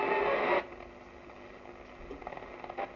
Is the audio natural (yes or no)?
yes